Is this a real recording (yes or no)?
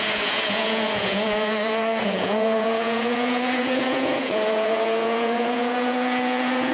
no